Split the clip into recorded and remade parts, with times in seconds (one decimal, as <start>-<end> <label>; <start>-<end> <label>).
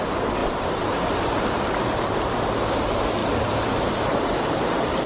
0.0-0.4 recorded; 0.4-2.6 remade; 2.6-3.2 recorded; 3.2-4.6 remade; 4.6-5.1 recorded